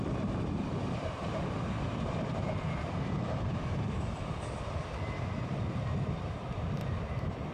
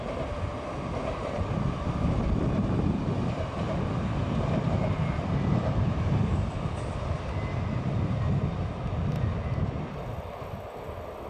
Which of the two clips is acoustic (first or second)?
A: second